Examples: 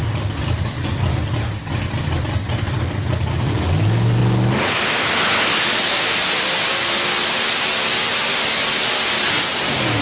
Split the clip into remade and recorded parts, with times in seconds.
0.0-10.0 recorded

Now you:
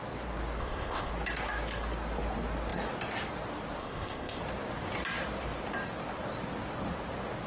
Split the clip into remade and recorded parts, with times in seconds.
0.0-0.6 recorded; 0.6-1.1 remade; 1.1-3.8 recorded; 3.8-4.4 remade; 4.4-7.5 recorded

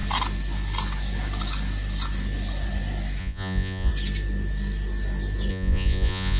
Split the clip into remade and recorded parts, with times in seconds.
0.0-3.2 recorded; 3.2-3.9 remade; 3.9-5.5 recorded; 5.5-6.4 remade

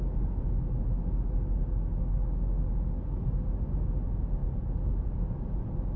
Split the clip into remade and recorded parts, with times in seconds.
0.0-6.0 recorded

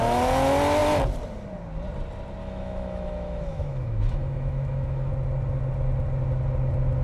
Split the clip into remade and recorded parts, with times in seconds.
0.0-2.4 recorded; 2.4-5.1 remade; 5.1-7.0 recorded

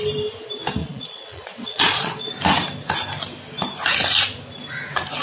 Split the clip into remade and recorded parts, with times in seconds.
0.0-0.8 recorded; 0.8-2.3 remade; 2.3-5.2 recorded

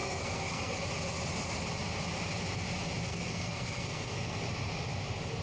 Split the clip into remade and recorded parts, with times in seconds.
0.0-0.8 remade; 0.8-3.1 recorded; 3.1-4.4 remade; 4.4-5.4 recorded